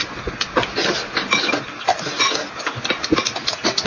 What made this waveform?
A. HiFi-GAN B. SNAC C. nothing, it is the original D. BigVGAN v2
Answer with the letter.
C